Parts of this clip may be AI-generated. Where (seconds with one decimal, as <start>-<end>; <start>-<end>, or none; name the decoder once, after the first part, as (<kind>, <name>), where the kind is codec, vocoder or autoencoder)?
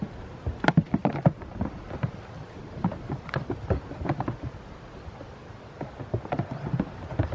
none